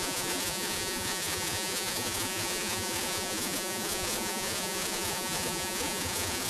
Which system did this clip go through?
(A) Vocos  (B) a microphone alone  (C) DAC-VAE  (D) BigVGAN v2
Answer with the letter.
A